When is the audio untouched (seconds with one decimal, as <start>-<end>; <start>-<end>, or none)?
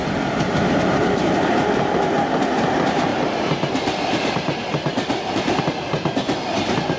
1.9-3.1; 5.6-7.0